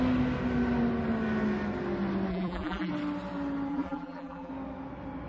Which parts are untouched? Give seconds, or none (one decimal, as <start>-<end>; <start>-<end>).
0.0-2.3; 2.9-3.7; 4.5-5.3